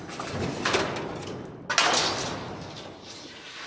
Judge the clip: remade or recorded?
recorded